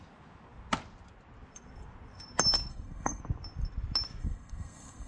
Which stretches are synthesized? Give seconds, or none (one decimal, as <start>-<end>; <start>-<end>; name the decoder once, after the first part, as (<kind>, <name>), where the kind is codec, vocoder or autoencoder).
2.7-3.2 (codec, SNAC); 4.2-5.1